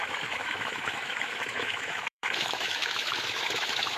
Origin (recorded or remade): remade